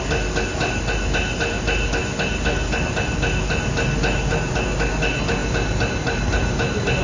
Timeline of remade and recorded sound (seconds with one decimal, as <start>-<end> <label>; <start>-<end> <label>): 0.0-7.0 recorded